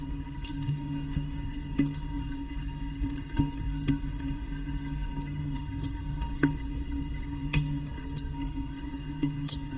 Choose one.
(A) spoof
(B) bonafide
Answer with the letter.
A